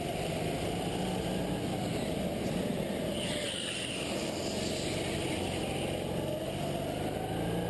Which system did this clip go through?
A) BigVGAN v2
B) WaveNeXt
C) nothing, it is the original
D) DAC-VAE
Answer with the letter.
C